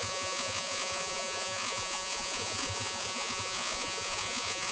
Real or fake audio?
fake